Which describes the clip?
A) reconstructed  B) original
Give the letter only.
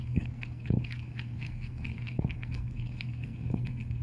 A